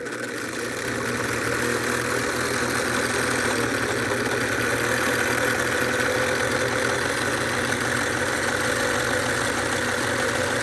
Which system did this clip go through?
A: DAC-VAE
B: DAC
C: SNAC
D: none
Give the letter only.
D